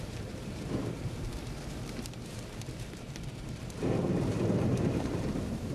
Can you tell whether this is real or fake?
fake